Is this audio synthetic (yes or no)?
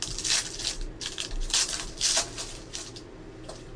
no